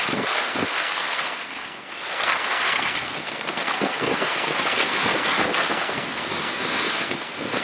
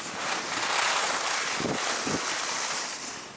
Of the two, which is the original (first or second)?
second